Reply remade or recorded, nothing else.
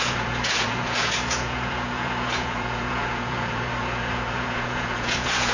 remade